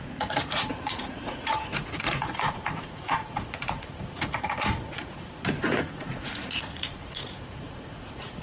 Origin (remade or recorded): remade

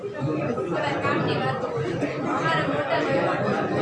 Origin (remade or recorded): recorded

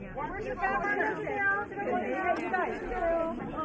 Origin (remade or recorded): recorded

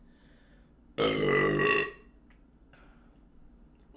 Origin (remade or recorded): recorded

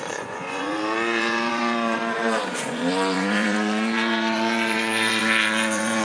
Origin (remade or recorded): remade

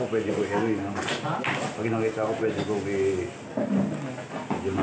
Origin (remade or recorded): recorded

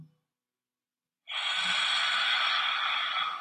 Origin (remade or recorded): recorded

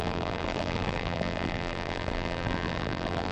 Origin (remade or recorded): remade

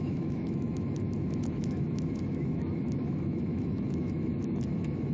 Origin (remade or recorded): remade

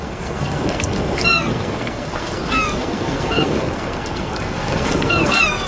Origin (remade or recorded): remade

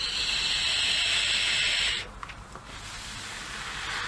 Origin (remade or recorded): recorded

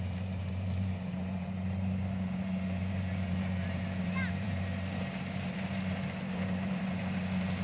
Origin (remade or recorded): remade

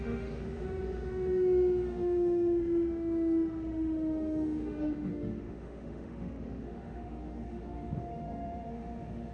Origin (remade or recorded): remade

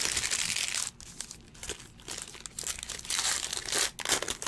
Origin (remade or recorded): recorded